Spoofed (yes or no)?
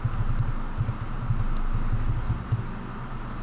no